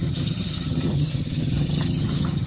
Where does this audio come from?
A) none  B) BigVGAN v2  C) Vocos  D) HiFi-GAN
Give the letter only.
D